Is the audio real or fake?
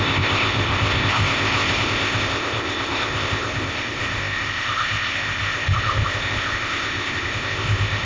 fake